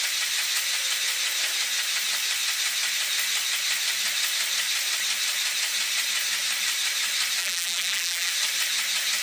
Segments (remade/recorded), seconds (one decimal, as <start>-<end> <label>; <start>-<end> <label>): 0.0-7.4 recorded; 7.4-8.3 remade; 8.3-9.2 recorded